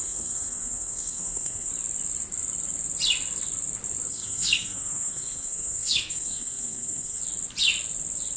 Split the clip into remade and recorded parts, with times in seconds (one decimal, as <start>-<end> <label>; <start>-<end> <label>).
0.0-1.7 remade; 1.7-4.1 recorded; 4.1-7.2 remade; 7.2-8.4 recorded